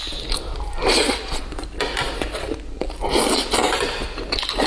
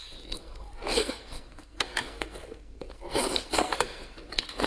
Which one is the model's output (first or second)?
second